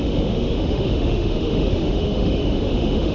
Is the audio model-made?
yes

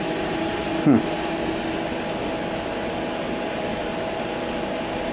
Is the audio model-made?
no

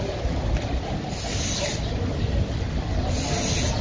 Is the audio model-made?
no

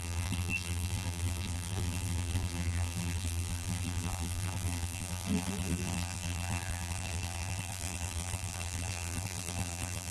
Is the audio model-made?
yes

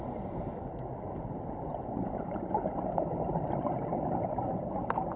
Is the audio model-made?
no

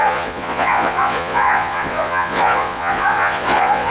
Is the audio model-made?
yes